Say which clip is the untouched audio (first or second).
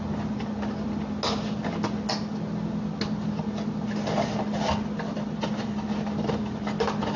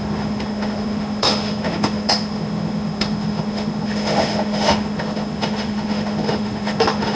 first